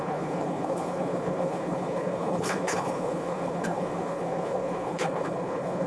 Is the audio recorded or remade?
remade